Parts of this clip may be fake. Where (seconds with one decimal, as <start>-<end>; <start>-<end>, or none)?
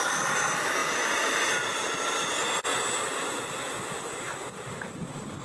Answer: 0.8-1.5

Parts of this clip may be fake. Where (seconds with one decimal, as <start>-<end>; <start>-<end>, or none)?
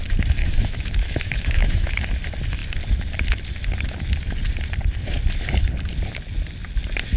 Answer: 0.4-2.0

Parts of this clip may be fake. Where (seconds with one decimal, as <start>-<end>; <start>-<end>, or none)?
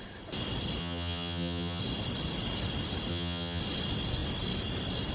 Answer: 0.8-1.8; 3.1-3.6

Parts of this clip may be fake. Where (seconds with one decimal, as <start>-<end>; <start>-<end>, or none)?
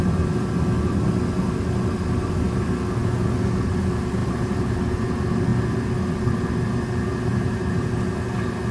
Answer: 4.2-4.7; 7.3-7.9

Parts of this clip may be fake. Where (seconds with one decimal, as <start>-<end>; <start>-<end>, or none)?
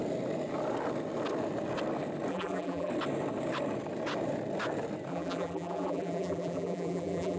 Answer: 2.3-2.9; 5.1-7.4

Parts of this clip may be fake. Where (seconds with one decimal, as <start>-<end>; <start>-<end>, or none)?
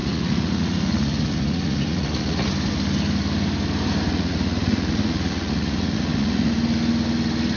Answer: 0.0-2.5; 4.1-6.5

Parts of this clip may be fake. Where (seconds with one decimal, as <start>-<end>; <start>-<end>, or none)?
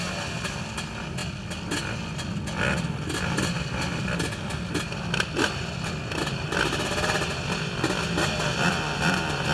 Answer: none